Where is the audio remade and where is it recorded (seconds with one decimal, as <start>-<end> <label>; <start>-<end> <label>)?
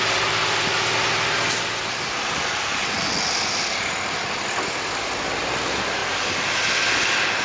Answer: 0.0-7.4 recorded